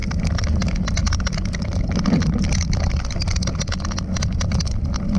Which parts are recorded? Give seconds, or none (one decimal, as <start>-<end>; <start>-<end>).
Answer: 0.0-5.2